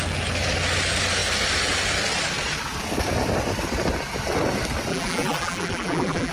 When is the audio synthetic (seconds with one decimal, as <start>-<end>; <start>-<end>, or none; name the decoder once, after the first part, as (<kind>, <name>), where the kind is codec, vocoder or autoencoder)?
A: 4.9-6.3 (vocoder, BigVGAN v2)